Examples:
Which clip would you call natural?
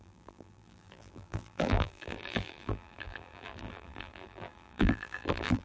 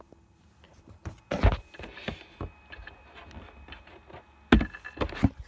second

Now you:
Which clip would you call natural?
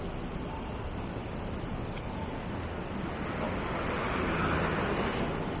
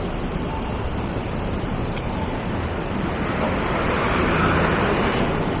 first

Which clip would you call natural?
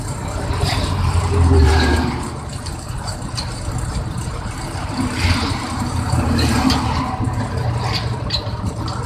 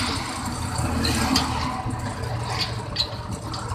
second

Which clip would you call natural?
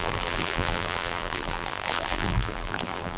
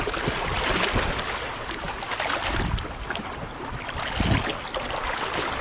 second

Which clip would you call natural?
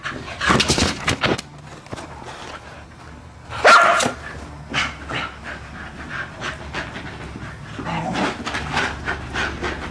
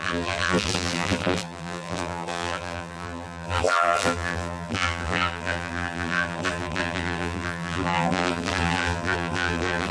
first